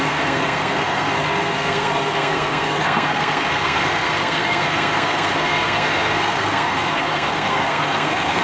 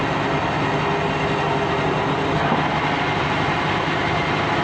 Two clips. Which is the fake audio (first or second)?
first